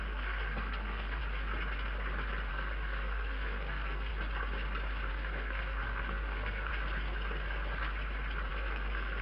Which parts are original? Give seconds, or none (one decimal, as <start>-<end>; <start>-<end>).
1.2-2.5; 4.1-5.1; 6.7-8.5